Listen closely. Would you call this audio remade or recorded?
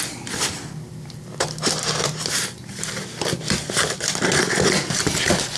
recorded